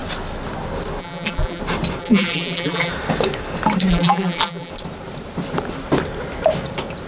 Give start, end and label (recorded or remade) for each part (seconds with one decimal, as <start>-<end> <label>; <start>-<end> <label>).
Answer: 0.0-1.0 recorded; 1.0-1.6 remade; 1.6-2.0 recorded; 2.0-2.9 remade; 2.9-3.9 recorded; 3.9-4.7 remade; 4.7-7.1 recorded